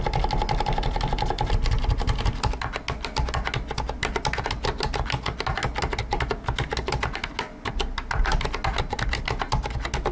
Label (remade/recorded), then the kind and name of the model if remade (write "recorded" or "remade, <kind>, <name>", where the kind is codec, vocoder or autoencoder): recorded